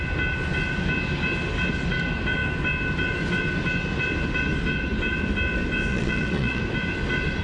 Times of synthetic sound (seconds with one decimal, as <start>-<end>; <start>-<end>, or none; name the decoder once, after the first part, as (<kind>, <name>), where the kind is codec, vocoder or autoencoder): 5.9-6.6 (vocoder, Vocos)